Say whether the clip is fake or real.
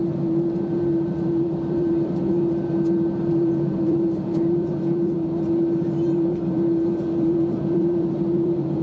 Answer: fake